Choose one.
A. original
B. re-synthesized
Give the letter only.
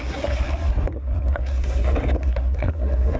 B